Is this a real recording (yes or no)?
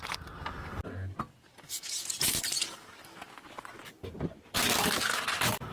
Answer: yes